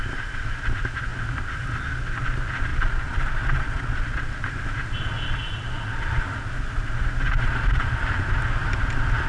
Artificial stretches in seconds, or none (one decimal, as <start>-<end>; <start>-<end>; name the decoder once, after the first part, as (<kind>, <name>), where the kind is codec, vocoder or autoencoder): 2.7-4.3 (vocoder, Vocos); 7.3-7.9